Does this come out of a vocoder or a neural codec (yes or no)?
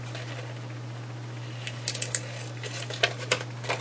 no